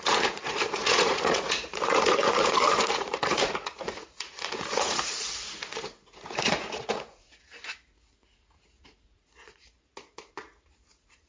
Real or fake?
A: fake